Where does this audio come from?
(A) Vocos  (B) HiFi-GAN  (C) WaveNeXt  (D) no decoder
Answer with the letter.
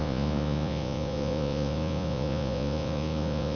A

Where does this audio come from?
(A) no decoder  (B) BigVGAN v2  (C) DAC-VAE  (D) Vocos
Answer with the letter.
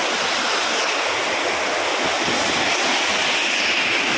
A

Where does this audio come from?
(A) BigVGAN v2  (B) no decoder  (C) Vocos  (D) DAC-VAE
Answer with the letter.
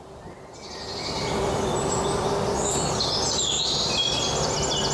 B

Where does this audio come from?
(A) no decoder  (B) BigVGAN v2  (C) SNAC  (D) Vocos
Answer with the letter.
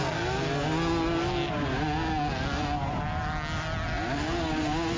A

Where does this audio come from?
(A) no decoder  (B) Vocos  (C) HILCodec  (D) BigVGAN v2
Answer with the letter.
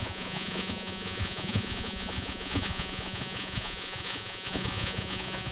B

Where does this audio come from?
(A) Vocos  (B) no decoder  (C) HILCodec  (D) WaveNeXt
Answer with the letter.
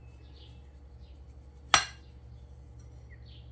B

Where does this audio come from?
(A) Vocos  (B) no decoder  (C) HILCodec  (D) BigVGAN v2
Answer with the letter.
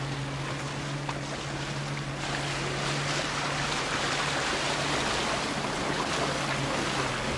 B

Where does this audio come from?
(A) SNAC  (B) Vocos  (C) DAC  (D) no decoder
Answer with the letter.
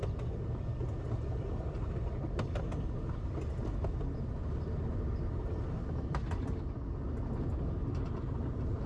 D